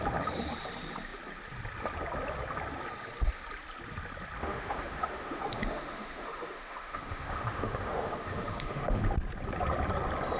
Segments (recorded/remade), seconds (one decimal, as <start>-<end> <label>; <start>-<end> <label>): 0.0-4.4 recorded; 4.4-9.0 remade; 9.0-10.4 recorded